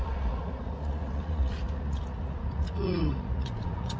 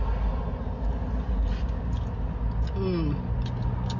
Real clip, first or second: second